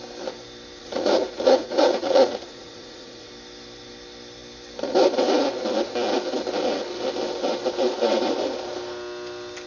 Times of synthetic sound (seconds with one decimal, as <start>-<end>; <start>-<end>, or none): 0.8-3.3

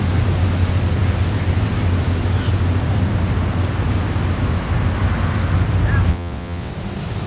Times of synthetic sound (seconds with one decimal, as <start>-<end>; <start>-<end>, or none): 6.1-6.7